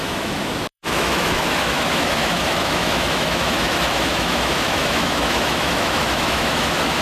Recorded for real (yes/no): no